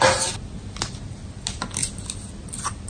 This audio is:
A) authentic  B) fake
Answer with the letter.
A